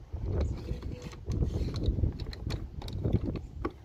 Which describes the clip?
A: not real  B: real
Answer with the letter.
B